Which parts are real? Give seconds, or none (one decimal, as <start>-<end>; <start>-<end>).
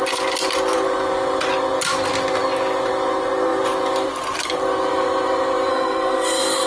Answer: 0.0-5.7